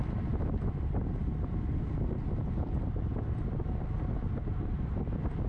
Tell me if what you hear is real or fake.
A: real